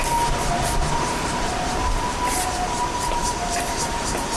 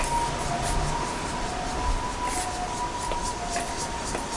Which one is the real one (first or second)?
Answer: second